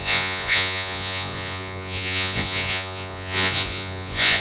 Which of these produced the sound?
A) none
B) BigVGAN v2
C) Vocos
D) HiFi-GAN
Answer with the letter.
C